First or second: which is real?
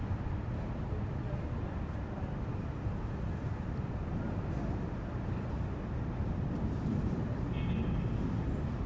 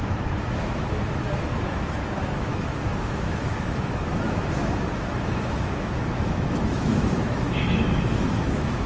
first